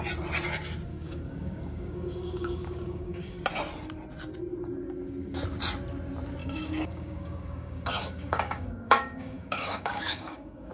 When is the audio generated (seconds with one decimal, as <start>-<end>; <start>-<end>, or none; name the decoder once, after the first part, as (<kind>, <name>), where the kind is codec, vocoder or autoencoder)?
0.9-3.4 (codec, DAC); 6.4-10.7